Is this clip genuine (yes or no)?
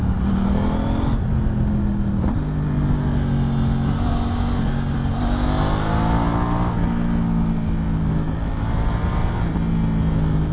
yes